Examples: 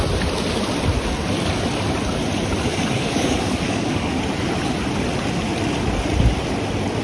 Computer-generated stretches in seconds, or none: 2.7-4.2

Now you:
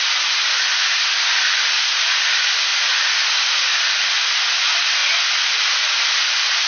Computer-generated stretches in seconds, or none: none

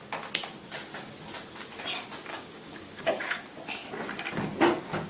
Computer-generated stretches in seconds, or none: 2.3-3.3

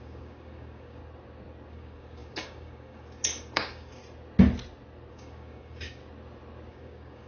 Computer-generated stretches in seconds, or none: 0.0-1.0; 1.7-4.0; 5.1-6.0; 6.7-7.3

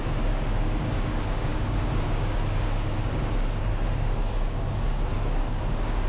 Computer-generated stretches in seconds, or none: 0.0-6.1